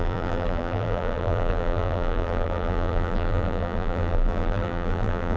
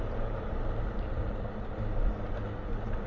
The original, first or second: second